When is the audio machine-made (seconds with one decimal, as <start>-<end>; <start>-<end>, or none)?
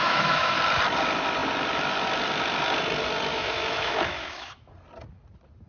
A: 0.0-0.6; 3.3-4.7